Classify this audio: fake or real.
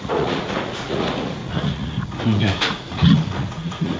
fake